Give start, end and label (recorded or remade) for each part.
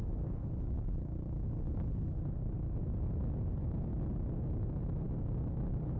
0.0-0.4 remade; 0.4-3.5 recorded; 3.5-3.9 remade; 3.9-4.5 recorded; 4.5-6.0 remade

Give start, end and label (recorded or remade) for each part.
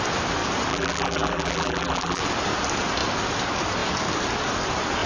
0.0-0.7 recorded; 0.7-2.2 remade; 2.2-5.1 recorded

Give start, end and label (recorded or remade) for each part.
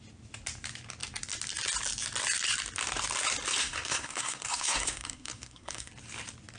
0.0-3.6 recorded; 3.6-5.9 remade; 5.9-6.6 recorded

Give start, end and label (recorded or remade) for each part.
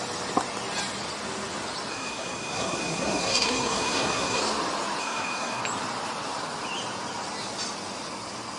0.0-1.9 recorded; 1.9-4.4 remade; 4.4-5.0 recorded; 5.0-5.6 remade; 5.6-8.6 recorded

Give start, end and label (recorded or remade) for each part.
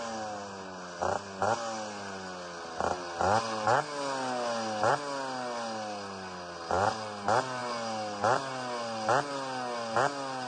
0.0-10.5 recorded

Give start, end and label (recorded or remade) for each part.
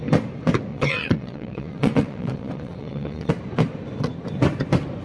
0.0-0.7 recorded; 0.7-3.3 remade; 3.3-5.0 recorded